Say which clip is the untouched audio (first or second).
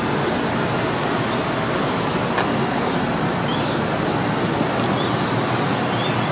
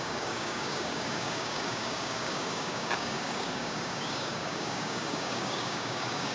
first